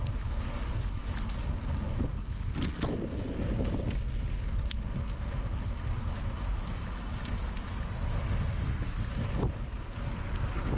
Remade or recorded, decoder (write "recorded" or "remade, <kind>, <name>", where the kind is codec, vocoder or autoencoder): recorded